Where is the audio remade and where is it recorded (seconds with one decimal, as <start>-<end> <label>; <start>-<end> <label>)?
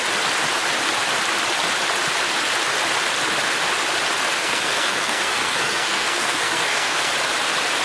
0.0-4.4 recorded; 4.4-7.1 remade; 7.1-7.8 recorded